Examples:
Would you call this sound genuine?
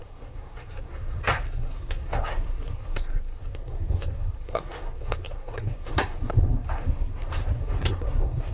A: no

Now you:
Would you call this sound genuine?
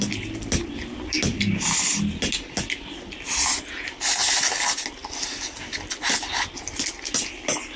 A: yes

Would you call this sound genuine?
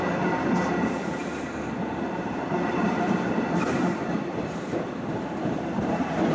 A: no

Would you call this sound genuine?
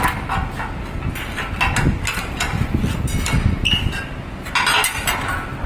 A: yes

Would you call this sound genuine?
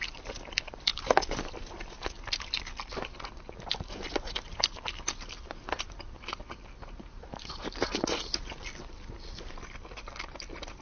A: yes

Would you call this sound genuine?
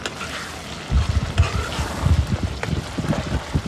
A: yes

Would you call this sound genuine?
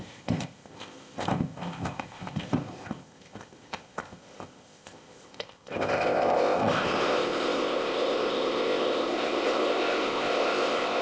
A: no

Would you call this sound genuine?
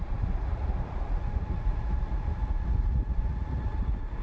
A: no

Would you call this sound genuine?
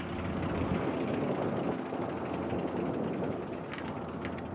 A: yes